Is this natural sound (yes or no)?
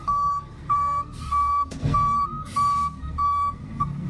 no